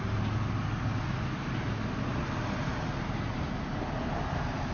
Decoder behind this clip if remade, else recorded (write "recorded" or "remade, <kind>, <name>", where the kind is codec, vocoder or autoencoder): recorded